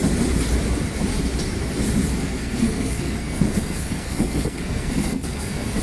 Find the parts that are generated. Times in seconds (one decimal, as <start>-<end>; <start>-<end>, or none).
2.2-5.8